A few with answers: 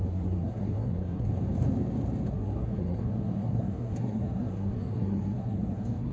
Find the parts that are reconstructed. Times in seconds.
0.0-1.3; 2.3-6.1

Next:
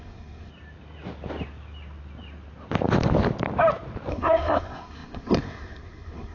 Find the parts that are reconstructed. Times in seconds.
0.0-0.5; 4.1-6.3

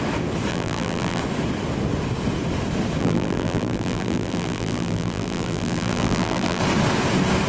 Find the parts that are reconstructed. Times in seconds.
0.5-1.2; 3.0-6.6

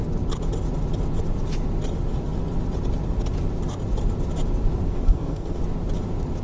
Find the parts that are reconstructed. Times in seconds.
4.9-5.6

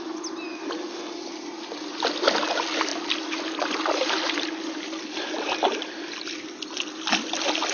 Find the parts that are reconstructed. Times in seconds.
none

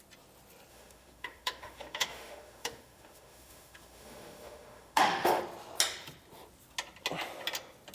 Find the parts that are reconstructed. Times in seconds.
0.7-5.4